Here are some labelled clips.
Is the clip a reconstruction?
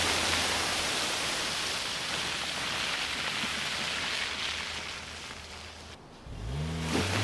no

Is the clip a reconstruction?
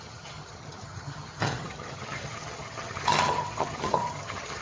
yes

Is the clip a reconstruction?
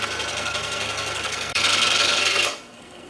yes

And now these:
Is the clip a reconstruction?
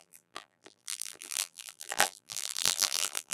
yes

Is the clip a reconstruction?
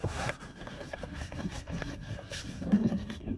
yes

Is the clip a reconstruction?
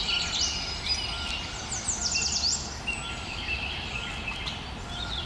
no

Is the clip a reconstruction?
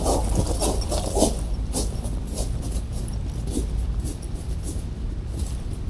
no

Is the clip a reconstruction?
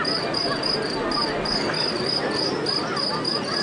no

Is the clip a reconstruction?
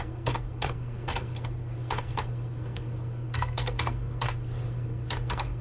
yes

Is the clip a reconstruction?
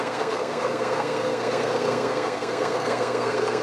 yes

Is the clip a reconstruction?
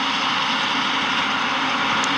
no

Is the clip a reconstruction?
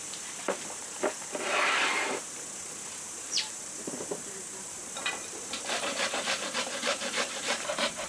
yes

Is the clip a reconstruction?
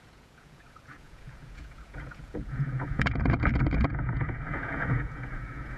yes